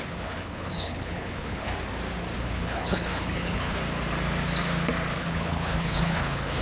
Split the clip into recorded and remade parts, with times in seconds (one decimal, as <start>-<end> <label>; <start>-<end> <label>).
0.0-1.7 remade; 1.7-2.4 recorded; 2.4-3.8 remade; 3.8-5.1 recorded; 5.1-6.6 remade